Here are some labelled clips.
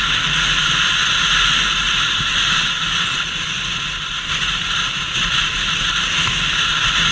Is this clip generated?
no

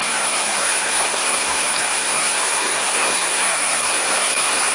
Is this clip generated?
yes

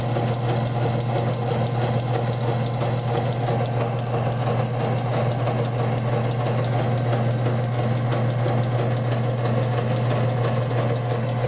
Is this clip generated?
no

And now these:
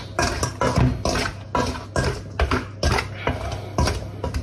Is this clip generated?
no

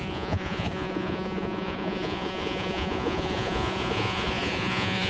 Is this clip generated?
yes